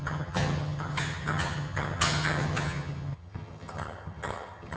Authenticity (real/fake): fake